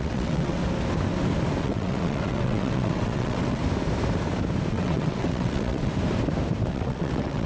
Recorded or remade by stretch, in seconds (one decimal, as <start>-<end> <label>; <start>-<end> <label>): 0.0-0.6 remade; 0.6-1.6 recorded; 1.6-3.6 remade; 3.6-4.7 recorded; 4.7-5.9 remade; 5.9-6.7 recorded; 6.7-7.5 remade